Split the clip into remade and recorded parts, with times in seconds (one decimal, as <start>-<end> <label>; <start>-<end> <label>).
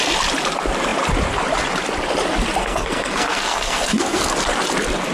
0.0-2.6 recorded; 2.6-4.2 remade; 4.2-5.1 recorded